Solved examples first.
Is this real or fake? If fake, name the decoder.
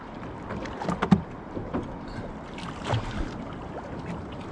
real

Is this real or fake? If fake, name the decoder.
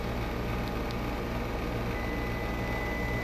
real